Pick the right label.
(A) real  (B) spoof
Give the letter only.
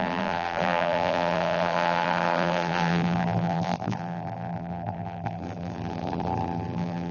B